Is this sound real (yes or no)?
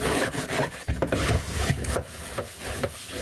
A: no